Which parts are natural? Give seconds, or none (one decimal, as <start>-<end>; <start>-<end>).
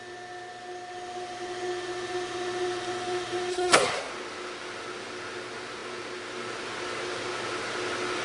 0.0-3.5; 4.1-8.2